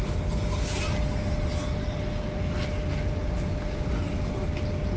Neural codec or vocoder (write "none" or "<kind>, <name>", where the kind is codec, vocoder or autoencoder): none